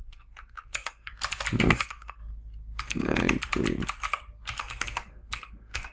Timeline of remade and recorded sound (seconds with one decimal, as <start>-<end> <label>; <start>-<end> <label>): 0.0-1.1 remade; 1.1-1.6 recorded; 1.6-2.2 remade; 2.2-2.8 recorded; 2.8-3.2 remade; 3.2-4.6 recorded; 4.6-5.9 remade